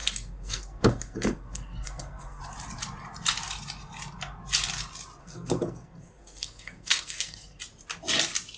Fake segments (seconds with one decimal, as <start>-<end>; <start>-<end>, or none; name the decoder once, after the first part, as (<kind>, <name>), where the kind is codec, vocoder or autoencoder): 0.0-2.4 (codec, SNAC); 5.2-7.6